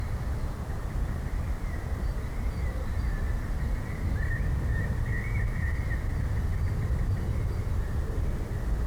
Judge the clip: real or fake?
fake